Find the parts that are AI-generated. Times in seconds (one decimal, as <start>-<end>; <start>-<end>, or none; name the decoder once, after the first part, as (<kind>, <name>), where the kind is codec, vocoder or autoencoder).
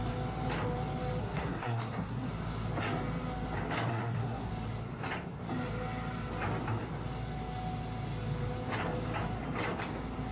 1.2-2.3 (codec, SNAC); 3.9-4.5